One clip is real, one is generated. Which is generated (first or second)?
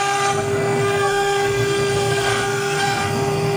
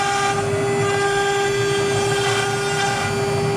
first